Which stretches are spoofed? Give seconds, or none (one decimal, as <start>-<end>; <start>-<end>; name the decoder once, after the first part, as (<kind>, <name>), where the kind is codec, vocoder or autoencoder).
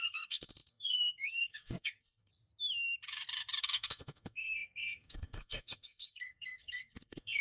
0.0-2.3 (codec, SNAC); 3.6-7.4